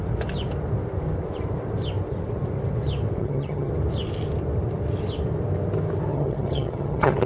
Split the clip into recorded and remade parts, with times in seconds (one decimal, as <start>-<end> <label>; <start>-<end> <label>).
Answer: 0.0-3.2 recorded; 3.2-3.7 remade; 3.7-6.1 recorded; 6.1-7.3 remade

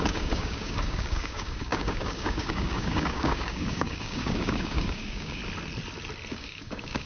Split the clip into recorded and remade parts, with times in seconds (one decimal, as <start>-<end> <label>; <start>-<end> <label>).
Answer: 0.0-5.4 remade; 5.4-6.3 recorded; 6.3-7.1 remade